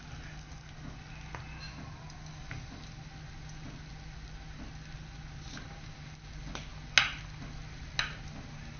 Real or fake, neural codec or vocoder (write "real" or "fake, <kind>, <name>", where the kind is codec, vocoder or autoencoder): real